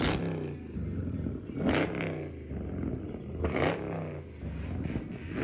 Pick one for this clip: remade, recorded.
recorded